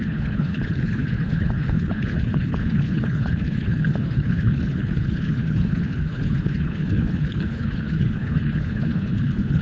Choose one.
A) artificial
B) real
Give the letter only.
A